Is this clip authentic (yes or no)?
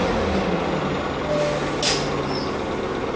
yes